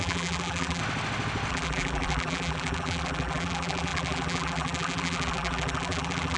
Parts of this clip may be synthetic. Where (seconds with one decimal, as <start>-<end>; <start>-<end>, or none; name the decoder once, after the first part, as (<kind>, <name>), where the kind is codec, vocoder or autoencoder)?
0.0-0.8 (vocoder, BigVGAN v2); 1.5-6.4